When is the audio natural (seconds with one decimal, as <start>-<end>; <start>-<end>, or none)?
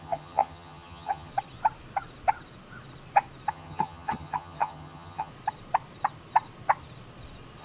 1.3-3.5; 5.3-7.6